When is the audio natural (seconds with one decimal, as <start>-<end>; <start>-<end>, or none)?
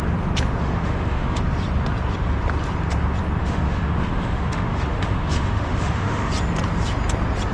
0.0-0.6; 1.4-3.4; 6.3-7.5